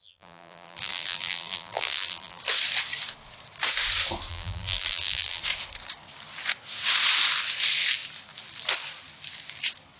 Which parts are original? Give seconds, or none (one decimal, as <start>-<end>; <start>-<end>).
2.4-4.3; 5.4-10.0